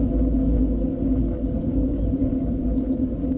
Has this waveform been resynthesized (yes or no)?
no